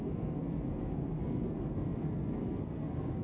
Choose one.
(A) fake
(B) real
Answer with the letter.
A